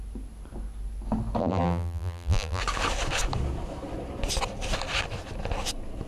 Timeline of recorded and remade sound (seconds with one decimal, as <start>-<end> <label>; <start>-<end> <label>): 0.0-1.4 recorded; 1.4-2.6 remade; 2.6-6.1 recorded